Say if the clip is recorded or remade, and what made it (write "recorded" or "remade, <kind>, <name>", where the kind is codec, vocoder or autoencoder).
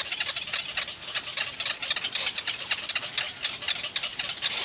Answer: recorded